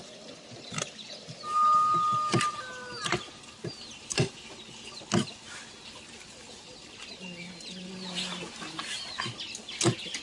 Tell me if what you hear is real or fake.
real